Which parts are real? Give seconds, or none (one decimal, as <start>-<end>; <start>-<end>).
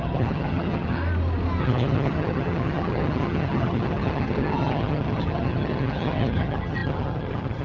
1.0-1.6